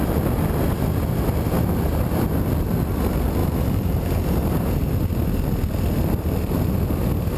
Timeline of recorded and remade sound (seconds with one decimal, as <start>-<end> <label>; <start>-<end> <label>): 0.0-3.4 recorded; 3.4-4.8 remade; 4.8-7.4 recorded

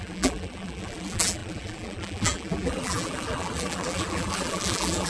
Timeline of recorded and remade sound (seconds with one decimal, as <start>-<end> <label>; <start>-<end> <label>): 0.0-5.1 remade

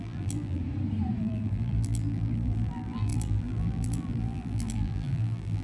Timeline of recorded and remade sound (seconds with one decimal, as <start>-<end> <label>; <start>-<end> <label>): 0.0-0.6 remade; 0.6-1.2 recorded; 1.2-5.6 remade

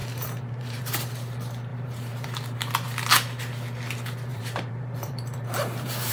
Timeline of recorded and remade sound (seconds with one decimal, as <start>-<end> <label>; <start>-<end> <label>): 0.0-0.8 remade; 0.8-1.7 recorded; 1.7-2.9 remade; 2.9-4.3 recorded; 4.3-6.1 remade

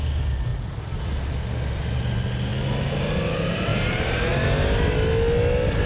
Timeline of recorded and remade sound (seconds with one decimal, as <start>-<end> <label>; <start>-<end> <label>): 0.0-0.5 recorded; 0.5-1.0 remade; 1.0-3.7 recorded; 3.7-4.3 remade; 4.3-5.9 recorded